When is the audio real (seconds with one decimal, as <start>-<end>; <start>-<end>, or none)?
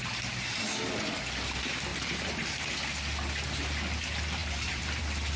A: 0.0-1.9; 2.7-4.4; 5.0-5.4